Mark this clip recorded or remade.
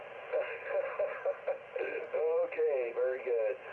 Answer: recorded